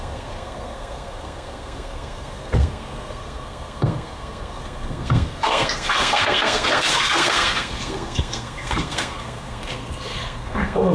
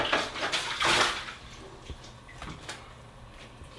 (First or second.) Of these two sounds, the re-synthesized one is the first